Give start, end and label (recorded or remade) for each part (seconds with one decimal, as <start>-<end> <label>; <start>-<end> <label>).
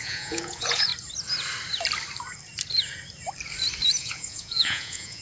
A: 0.0-0.9 remade; 0.9-4.0 recorded; 4.0-5.2 remade